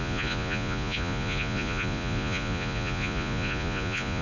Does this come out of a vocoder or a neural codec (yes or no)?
yes